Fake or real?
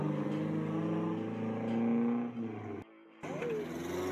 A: real